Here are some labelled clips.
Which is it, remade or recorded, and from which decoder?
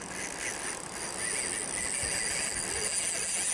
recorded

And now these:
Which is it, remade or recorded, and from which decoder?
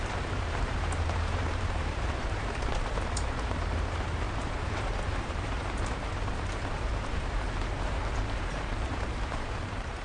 remade, vocoder, BigVGAN v2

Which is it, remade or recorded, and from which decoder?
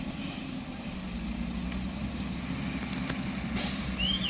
recorded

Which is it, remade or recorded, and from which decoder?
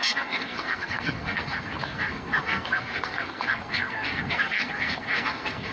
remade, codec, SNAC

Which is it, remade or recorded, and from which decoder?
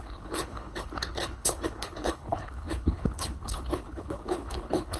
remade, codec, HILCodec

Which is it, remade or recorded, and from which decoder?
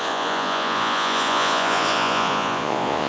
remade, vocoder, Vocos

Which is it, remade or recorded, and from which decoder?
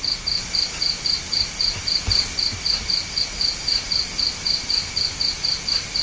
recorded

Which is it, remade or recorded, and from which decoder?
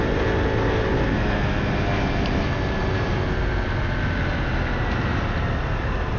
recorded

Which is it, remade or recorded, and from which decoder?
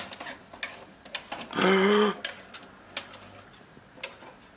recorded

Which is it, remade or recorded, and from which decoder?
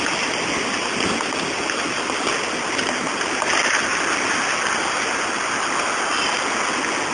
recorded